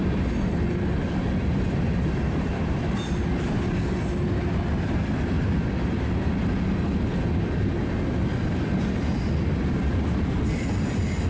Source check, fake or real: real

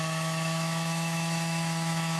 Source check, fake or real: fake